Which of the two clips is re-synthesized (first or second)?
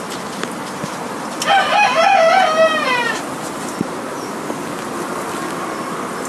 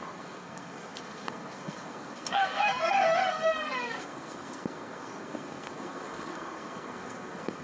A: second